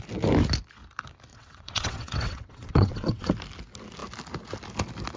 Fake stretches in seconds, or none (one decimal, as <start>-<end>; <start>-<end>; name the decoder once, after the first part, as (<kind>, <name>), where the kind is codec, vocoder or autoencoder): 1.3-3.3 (vocoder, WaveNeXt)